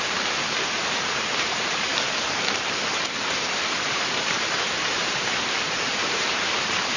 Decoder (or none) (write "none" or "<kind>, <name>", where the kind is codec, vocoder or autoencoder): vocoder, BigVGAN v2